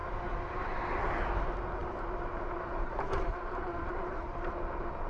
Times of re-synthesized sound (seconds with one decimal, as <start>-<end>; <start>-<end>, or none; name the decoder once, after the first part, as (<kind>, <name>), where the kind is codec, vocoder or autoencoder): 0.0-0.8 (vocoder, BigVGAN v2); 1.8-4.5